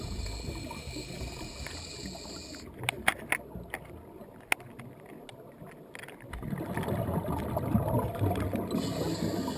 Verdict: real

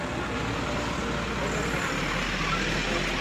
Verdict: real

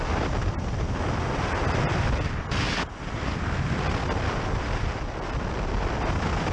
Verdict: real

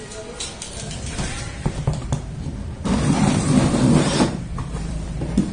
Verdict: fake